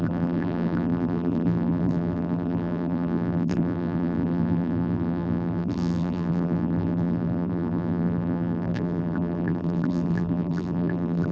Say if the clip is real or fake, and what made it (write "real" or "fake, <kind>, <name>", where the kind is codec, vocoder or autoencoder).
fake, vocoder, BigVGAN v2